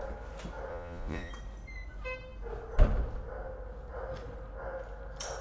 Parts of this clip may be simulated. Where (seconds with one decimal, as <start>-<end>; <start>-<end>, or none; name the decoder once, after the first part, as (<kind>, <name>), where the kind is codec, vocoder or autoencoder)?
0.7-1.3 (vocoder, Vocos)